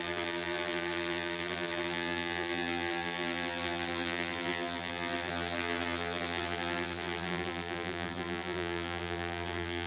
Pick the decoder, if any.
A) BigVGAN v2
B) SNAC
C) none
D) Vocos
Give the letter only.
A